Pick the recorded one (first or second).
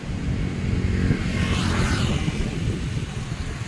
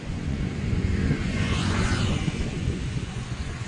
first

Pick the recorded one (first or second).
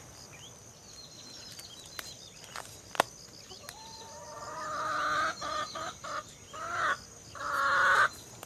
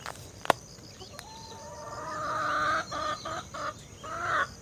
first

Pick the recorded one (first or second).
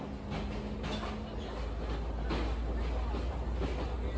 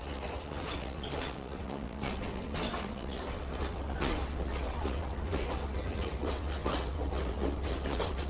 first